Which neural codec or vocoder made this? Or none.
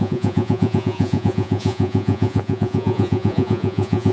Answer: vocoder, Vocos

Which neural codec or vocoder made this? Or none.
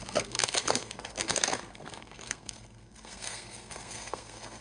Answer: codec, SNAC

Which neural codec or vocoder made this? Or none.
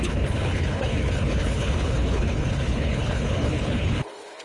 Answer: codec, HILCodec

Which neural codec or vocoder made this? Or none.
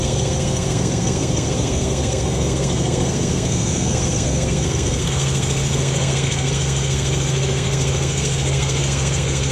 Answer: codec, SNAC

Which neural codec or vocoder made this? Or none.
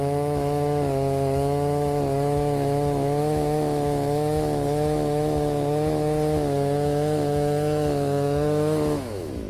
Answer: autoencoder, DAC-VAE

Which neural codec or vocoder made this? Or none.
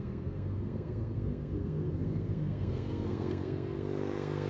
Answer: codec, SNAC